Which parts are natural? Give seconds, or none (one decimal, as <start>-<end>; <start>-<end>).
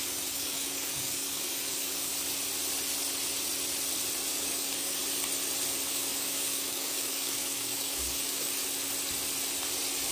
2.1-4.3; 5.0-5.9; 8.6-10.1